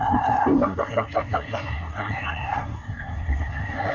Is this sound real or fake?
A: fake